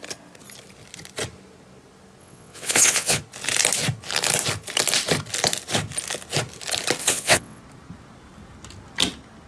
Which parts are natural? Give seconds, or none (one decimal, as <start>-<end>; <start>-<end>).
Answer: 0.0-2.2; 3.2-7.0; 7.6-9.5